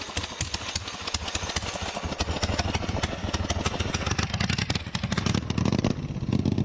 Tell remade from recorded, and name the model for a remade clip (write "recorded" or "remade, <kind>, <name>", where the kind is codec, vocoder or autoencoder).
recorded